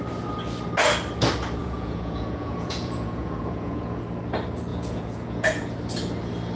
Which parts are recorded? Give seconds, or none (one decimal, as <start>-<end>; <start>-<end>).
0.0-1.6; 4.0-4.7; 5.7-6.6